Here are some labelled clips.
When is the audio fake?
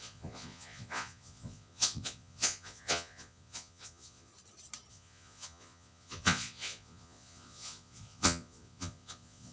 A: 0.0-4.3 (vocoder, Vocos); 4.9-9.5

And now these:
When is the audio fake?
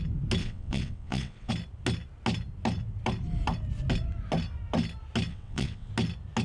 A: 0.4-1.5 (vocoder, WaveNeXt); 5.3-5.9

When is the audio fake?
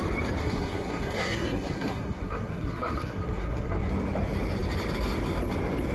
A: 0.4-3.9 (codec, SNAC)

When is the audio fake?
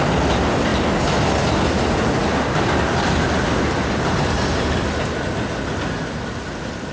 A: none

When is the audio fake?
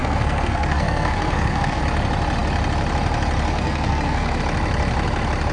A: 0.0-1.8 (codec, SNAC); 3.5-4.4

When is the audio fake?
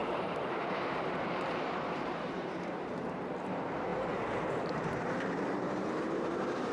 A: 0.0-3.2 (vocoder, BigVGAN v2); 3.9-6.3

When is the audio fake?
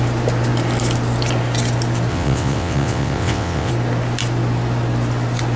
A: 2.1-3.7 (vocoder, WaveNeXt)